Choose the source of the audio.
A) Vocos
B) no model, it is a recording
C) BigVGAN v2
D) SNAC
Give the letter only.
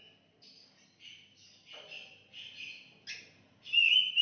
B